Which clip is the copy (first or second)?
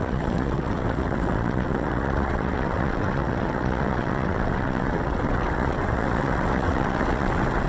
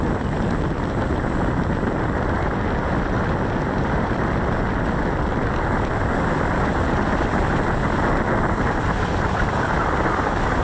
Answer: first